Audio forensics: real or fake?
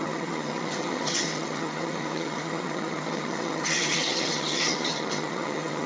fake